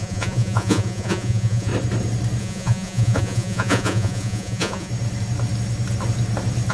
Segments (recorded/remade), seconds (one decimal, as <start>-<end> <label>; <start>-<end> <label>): 0.0-1.7 remade; 1.7-2.4 recorded; 2.4-4.9 remade; 4.9-6.7 recorded